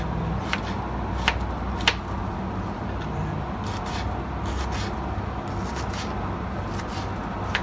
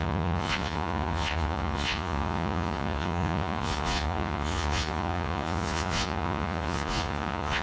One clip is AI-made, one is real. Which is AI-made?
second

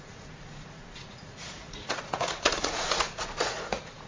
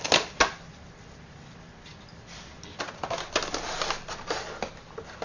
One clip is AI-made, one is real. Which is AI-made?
first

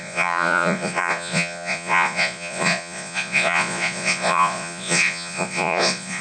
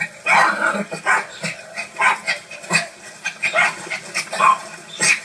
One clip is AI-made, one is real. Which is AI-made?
first